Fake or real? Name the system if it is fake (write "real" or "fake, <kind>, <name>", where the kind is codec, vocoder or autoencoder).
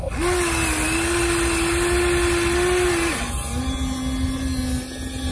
real